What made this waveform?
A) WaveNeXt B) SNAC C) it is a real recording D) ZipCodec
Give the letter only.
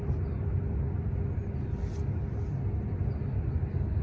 C